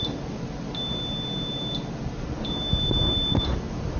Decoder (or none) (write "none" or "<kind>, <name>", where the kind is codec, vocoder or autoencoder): none